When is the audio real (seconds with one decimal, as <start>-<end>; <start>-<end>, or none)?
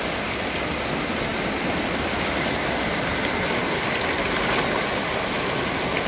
0.0-6.1